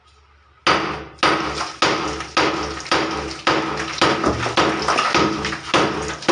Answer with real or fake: real